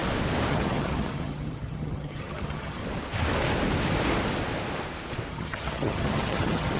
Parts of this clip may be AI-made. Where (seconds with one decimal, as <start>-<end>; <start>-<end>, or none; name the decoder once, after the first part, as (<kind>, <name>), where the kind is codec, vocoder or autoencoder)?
0.5-2.8 (vocoder, HiFi-GAN); 5.3-6.8